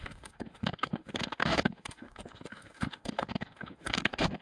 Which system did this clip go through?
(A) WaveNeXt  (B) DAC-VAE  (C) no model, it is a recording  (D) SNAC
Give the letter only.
B